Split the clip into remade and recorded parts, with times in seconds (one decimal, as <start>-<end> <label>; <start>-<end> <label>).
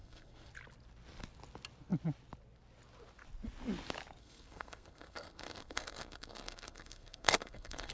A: 0.0-0.5 remade; 0.5-4.2 recorded; 4.2-7.9 remade